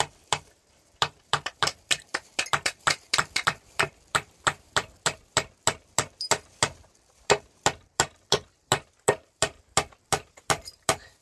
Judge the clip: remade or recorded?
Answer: remade